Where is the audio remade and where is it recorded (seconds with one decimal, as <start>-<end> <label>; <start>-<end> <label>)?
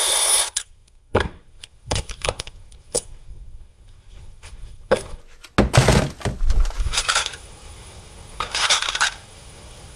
0.0-5.2 remade; 5.2-6.8 recorded; 6.8-10.0 remade